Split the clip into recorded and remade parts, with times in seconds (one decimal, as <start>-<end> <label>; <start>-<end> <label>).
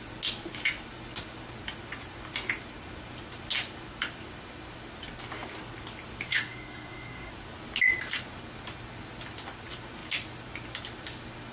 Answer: 0.0-6.3 recorded; 6.3-7.3 remade; 7.3-11.5 recorded